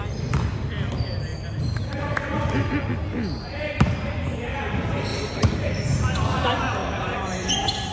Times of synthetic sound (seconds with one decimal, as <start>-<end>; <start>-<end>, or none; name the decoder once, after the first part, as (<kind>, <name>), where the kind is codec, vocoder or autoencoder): 5.1-5.8 (vocoder, BigVGAN v2); 6.8-7.5